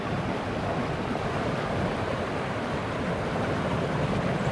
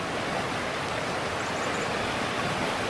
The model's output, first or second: first